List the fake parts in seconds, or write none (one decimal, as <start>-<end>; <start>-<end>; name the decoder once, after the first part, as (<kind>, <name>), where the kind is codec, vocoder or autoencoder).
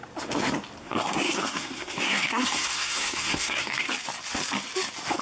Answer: 0.8-3.9 (codec, SNAC)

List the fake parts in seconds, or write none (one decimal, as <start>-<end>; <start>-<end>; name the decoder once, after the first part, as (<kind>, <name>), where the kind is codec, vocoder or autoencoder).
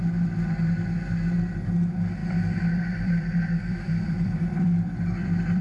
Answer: 2.2-5.6 (vocoder, BigVGAN v2)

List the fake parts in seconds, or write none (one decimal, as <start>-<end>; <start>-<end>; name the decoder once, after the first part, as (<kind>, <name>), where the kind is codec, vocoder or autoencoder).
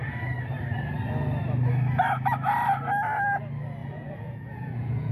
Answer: 3.8-5.1 (vocoder, Vocos)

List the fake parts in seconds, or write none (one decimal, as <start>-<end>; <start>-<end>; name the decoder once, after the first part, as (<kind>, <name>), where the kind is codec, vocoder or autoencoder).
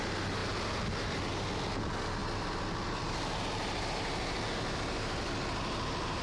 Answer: 2.2-6.2 (vocoder, BigVGAN v2)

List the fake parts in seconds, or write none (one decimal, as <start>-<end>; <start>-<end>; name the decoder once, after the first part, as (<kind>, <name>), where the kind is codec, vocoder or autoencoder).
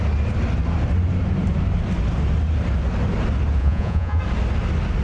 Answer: 3.6-4.2 (vocoder, Vocos)